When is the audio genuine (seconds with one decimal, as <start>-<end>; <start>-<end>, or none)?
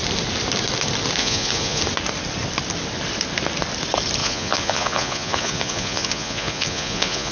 0.0-1.2; 1.8-4.2